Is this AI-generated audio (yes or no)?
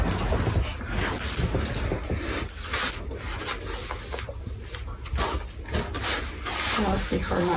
no